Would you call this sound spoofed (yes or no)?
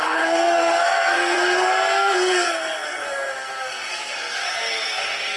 yes